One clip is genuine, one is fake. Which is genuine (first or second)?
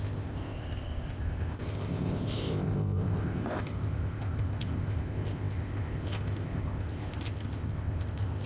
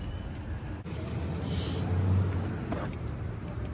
second